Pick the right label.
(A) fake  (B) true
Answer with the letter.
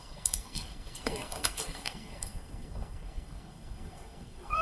A